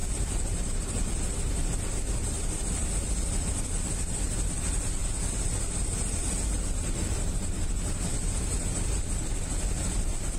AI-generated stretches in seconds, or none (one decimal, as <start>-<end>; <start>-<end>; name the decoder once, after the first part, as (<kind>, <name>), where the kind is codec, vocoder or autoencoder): 0.0-3.1 (vocoder, BigVGAN v2)